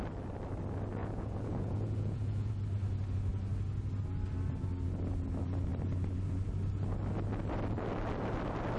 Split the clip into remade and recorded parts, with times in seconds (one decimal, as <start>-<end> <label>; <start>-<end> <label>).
0.0-1.0 recorded; 1.0-2.5 remade; 2.5-8.8 recorded